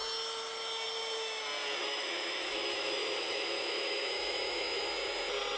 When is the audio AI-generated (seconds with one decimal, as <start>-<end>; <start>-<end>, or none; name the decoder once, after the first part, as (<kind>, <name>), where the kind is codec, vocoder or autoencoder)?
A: 1.8-4.9 (autoencoder, DAC-VAE)